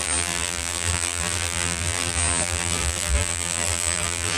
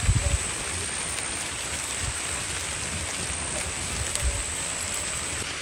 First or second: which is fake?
first